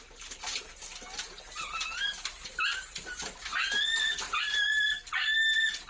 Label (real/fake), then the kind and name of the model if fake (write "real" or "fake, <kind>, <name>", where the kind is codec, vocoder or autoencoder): real